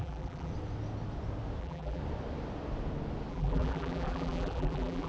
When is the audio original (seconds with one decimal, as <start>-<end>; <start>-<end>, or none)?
0.5-1.6; 2.0-3.3